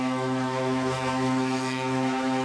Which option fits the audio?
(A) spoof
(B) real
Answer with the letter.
A